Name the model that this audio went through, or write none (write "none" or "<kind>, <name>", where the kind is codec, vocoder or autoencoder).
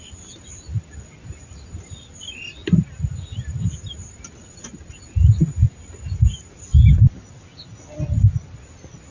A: none